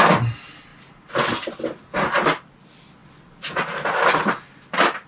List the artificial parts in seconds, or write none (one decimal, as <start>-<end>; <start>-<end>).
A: 1.9-2.6; 3.0-3.6